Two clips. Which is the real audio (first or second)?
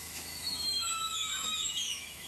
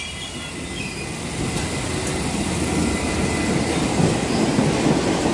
second